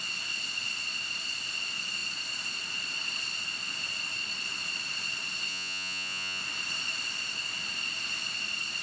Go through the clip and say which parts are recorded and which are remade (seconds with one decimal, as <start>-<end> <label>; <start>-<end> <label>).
0.0-5.5 recorded; 5.5-6.4 remade; 6.4-8.8 recorded

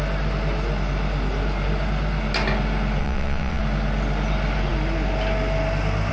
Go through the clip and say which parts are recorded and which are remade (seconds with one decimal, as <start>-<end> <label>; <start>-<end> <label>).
0.0-3.0 recorded; 3.0-3.6 remade; 3.6-6.1 recorded

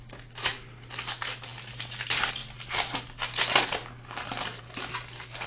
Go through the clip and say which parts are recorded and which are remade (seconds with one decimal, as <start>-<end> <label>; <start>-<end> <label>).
0.0-5.5 recorded